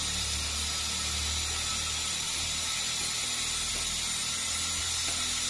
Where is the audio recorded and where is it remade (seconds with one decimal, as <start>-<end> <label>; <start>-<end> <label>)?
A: 0.0-5.5 recorded